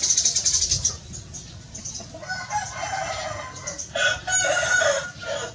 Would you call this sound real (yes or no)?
yes